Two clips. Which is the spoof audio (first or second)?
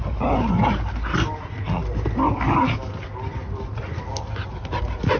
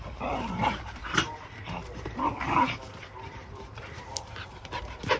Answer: second